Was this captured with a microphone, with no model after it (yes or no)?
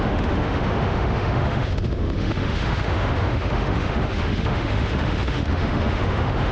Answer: no